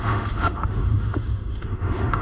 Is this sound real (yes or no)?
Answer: no